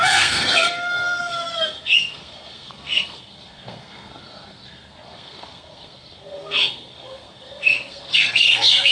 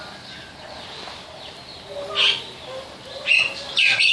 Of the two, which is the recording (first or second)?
second